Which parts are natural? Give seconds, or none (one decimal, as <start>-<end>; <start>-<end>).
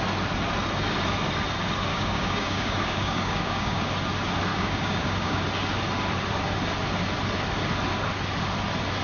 0.0-1.9; 3.8-4.5; 5.4-9.0